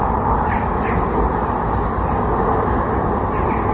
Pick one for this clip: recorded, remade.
recorded